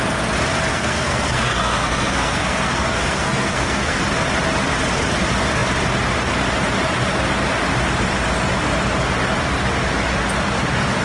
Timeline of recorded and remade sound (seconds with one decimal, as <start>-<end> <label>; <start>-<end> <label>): 0.0-0.7 recorded; 0.7-4.0 remade; 4.0-11.0 recorded

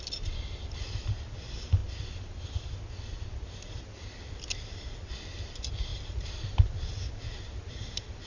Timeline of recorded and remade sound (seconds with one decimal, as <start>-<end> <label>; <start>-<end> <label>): 0.0-8.3 recorded

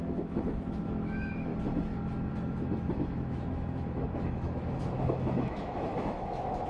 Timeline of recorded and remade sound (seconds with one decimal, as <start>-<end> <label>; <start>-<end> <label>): 0.0-1.5 remade; 1.5-2.3 recorded; 2.3-6.7 remade

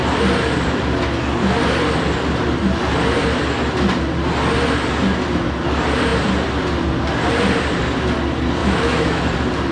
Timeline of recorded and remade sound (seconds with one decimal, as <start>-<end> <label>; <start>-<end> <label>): 0.0-8.6 recorded; 8.6-9.2 remade; 9.2-9.7 recorded